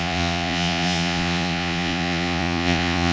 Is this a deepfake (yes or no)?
yes